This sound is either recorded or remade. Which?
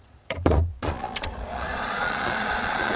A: remade